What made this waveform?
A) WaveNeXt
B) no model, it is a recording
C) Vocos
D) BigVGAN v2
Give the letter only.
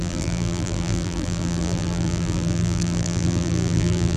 D